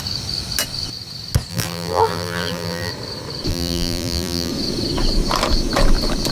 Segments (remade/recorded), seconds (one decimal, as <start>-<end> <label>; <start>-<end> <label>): 0.0-1.5 recorded; 1.5-2.9 remade; 2.9-3.5 recorded; 3.5-4.5 remade; 4.5-6.3 recorded